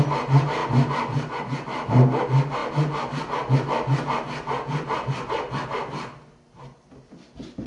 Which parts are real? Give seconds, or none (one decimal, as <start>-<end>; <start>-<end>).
0.0-7.7